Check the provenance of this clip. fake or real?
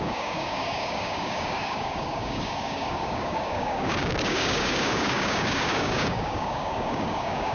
fake